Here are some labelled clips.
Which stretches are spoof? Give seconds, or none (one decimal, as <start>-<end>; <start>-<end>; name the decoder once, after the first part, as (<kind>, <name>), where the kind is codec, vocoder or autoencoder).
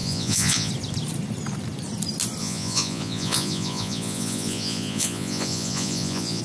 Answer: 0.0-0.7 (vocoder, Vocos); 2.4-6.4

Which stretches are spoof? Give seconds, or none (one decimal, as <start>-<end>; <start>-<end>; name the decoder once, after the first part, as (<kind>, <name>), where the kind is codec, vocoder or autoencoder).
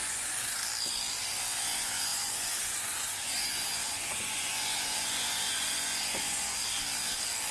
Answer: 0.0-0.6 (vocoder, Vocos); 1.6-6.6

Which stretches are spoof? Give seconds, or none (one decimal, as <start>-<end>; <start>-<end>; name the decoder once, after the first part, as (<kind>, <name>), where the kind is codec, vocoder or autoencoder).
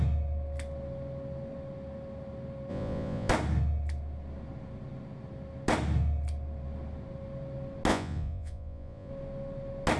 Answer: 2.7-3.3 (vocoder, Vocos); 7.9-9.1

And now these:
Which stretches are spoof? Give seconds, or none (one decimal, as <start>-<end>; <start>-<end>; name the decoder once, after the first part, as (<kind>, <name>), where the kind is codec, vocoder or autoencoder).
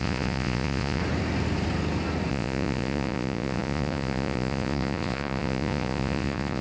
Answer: 0.0-1.0 (vocoder, Vocos); 2.3-6.6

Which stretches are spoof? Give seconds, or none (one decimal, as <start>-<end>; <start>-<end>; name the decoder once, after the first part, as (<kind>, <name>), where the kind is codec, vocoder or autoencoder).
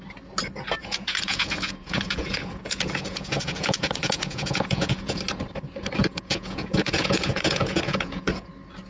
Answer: 0.8-5.2 (vocoder, Vocos); 6.0-8.5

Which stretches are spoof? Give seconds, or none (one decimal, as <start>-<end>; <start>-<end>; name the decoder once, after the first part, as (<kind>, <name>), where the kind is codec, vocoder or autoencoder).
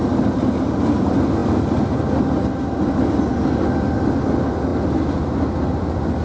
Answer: none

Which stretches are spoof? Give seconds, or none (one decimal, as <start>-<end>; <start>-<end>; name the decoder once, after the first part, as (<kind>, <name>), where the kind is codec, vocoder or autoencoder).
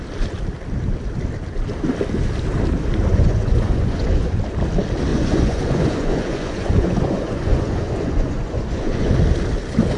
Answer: 3.1-4.4 (vocoder, Vocos); 5.1-9.1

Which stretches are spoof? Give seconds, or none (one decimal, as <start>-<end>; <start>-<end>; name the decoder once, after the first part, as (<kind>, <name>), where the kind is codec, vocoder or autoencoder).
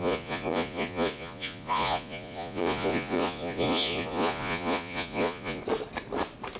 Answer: 0.0-5.6 (vocoder, Vocos)